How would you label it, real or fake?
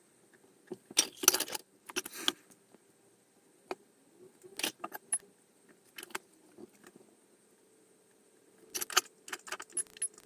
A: real